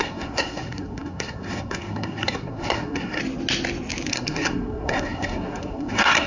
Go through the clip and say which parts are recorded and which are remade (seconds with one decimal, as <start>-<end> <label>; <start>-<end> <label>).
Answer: 0.0-3.2 remade; 3.2-4.1 recorded; 4.1-6.3 remade